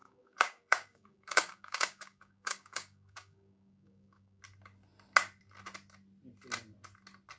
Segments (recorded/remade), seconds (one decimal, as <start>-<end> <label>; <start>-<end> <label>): 0.0-4.4 remade; 4.4-7.4 recorded